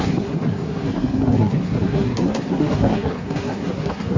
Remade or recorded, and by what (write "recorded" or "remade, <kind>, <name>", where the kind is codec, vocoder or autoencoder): remade, codec, SNAC